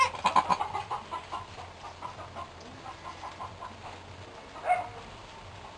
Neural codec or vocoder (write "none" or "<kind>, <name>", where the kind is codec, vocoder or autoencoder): none